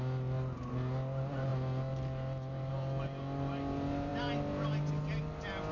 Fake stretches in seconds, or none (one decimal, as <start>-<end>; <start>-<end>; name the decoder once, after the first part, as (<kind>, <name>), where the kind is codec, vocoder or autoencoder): none